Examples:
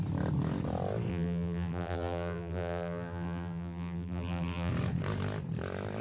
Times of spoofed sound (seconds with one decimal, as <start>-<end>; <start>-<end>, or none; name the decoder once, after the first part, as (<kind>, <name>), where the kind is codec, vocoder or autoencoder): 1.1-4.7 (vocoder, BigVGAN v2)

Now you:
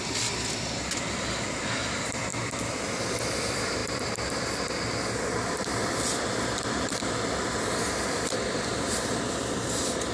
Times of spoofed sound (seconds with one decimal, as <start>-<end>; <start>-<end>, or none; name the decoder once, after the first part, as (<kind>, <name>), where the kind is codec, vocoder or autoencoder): 0.0-10.1 (vocoder, BigVGAN v2)

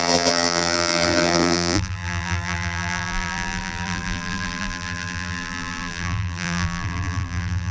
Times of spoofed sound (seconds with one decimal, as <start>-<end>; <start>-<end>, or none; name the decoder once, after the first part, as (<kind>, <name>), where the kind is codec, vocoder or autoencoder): 0.0-7.7 (vocoder, BigVGAN v2)

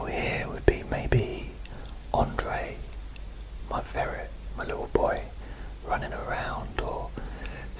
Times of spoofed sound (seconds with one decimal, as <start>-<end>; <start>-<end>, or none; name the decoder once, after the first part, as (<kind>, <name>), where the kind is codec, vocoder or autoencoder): 6.2-7.3 (vocoder, BigVGAN v2)

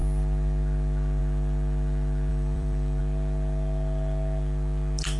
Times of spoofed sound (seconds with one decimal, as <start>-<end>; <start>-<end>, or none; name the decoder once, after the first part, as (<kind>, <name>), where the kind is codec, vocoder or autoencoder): 2.3-3.0 (vocoder, BigVGAN v2)